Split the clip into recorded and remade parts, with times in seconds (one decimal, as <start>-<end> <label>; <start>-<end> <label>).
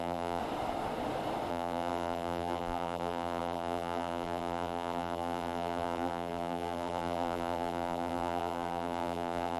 0.0-0.4 remade; 0.4-1.5 recorded; 1.5-9.6 remade